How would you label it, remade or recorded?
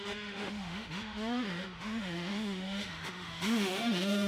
remade